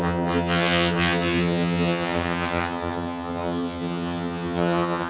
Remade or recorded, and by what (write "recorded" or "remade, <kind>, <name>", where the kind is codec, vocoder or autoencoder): remade, vocoder, HiFi-GAN